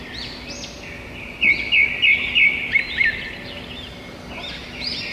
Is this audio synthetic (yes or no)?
no